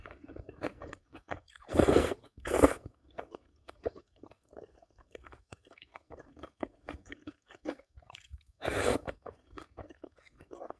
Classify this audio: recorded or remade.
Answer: remade